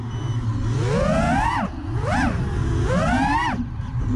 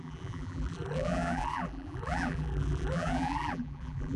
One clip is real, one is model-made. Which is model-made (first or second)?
second